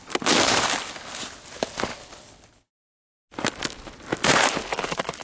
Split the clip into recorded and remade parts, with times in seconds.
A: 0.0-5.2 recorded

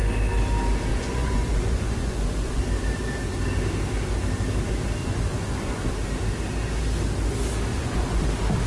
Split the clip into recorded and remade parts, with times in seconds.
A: 0.0-0.9 recorded; 0.9-2.6 remade; 2.6-5.0 recorded; 5.0-5.9 remade; 5.9-7.7 recorded; 7.7-8.2 remade; 8.2-8.7 recorded

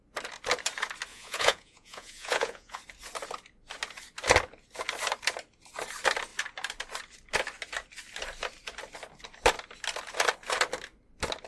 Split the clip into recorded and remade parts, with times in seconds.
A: 0.0-1.1 recorded; 1.1-2.8 remade; 2.8-11.5 recorded

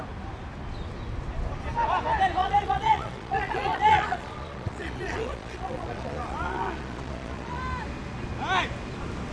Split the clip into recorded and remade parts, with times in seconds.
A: 0.0-2.4 recorded; 2.4-7.6 remade; 7.6-9.3 recorded

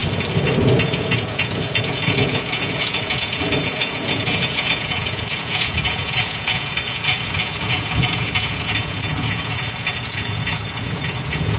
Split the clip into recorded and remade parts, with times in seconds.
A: 0.0-0.6 recorded; 0.6-11.6 remade

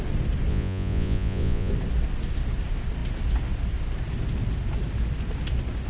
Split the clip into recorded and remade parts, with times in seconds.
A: 0.0-0.5 recorded; 0.5-1.7 remade; 1.7-5.9 recorded